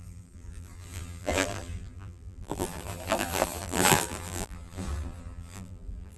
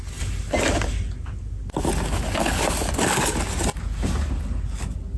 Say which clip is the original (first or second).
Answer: second